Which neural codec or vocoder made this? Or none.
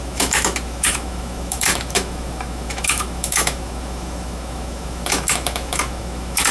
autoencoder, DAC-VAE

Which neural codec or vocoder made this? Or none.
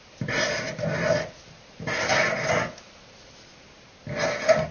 none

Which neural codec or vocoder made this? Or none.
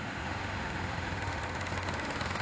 autoencoder, DAC-VAE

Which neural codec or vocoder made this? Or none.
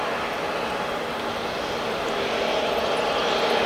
none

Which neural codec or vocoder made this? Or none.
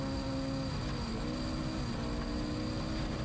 none